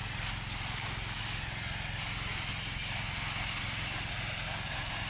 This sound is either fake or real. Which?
real